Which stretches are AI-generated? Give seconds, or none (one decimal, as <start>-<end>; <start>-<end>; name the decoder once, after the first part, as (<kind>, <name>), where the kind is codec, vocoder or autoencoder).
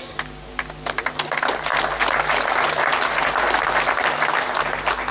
none